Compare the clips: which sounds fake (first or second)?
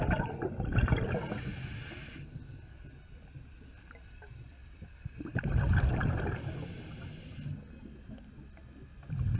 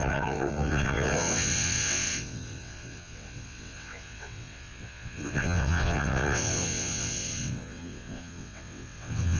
second